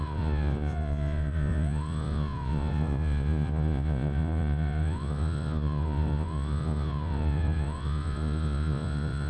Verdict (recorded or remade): remade